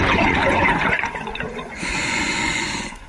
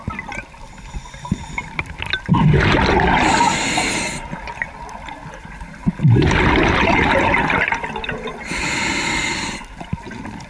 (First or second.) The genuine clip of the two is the second